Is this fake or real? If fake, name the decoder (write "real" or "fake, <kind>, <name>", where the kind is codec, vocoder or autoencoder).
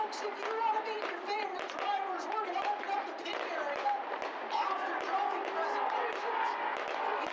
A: real